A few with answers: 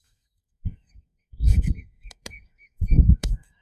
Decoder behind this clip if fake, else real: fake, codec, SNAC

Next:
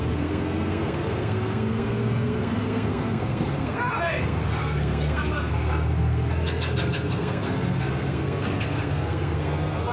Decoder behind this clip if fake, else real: fake, codec, SNAC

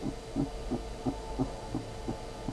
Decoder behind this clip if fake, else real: real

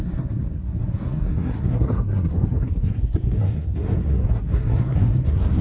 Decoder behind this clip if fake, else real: fake, codec, SNAC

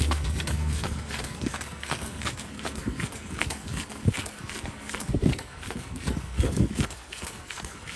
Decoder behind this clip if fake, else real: fake, codec, SNAC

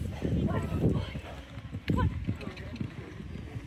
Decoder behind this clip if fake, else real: real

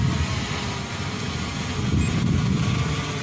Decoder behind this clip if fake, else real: real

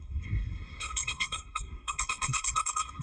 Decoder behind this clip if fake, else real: fake, codec, SNAC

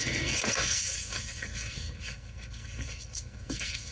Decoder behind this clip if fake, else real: fake, codec, SNAC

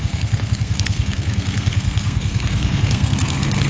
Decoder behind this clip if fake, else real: fake, codec, SNAC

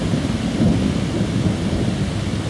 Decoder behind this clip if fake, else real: real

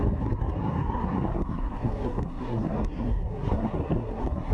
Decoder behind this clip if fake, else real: fake, codec, SNAC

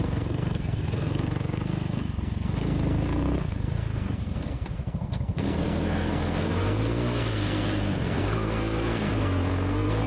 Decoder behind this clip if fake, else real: fake, codec, SNAC